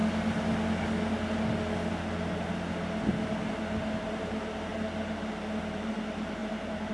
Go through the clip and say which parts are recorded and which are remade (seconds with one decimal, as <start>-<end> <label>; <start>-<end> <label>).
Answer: 0.0-4.1 recorded; 4.1-4.7 remade; 4.7-5.6 recorded; 5.6-6.9 remade